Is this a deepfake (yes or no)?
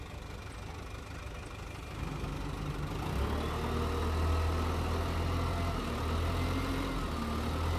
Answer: no